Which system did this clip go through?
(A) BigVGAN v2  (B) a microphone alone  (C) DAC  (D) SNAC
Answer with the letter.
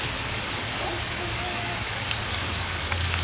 C